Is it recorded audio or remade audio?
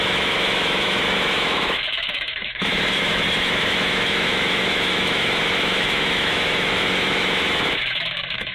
remade